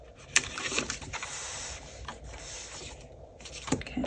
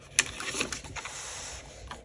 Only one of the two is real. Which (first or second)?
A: second